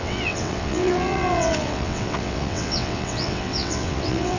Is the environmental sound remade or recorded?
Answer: remade